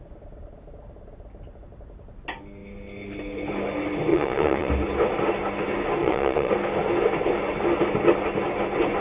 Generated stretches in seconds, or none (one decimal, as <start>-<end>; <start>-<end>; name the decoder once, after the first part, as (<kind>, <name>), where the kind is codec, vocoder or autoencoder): 4.1-4.7 (vocoder, Vocos); 6.0-6.5